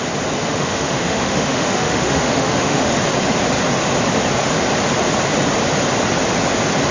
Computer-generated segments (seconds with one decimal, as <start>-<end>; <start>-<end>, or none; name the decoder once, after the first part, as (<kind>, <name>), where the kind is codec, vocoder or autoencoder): 0.5-2.9 (autoencoder, DAC-VAE)